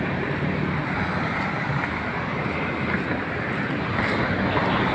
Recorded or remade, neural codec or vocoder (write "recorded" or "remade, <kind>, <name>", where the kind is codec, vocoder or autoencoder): recorded